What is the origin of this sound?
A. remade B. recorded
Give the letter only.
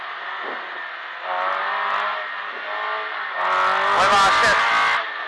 B